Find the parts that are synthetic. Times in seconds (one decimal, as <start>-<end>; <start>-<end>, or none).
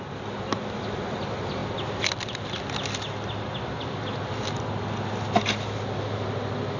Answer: none